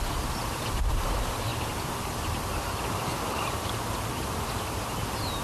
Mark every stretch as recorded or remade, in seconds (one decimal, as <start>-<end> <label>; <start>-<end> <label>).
0.0-1.5 recorded; 1.5-3.1 remade; 3.1-5.4 recorded